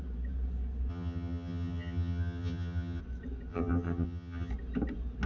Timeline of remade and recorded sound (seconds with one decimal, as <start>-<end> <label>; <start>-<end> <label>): 0.0-0.9 recorded; 0.9-3.0 remade; 3.0-3.5 recorded; 3.5-4.5 remade; 4.5-5.3 recorded